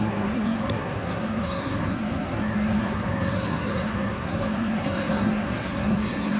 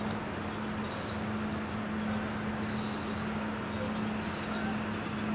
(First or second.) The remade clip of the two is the first